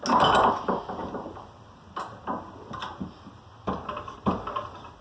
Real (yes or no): yes